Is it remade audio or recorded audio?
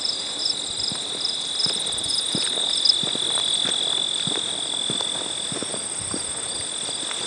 recorded